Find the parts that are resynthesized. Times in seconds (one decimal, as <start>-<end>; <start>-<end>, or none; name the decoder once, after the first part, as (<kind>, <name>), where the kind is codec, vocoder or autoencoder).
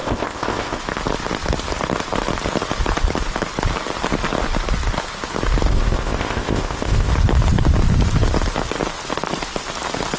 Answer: 0.0-0.8 (codec, ZipCodec); 5.7-7.1